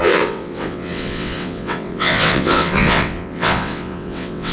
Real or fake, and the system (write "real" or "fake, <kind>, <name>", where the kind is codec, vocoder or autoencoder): fake, vocoder, WaveNeXt